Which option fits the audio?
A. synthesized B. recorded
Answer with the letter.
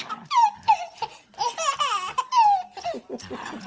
B